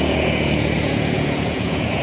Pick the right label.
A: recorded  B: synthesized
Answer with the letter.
B